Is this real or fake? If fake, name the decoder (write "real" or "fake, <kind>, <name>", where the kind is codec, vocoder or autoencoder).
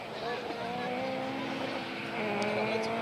real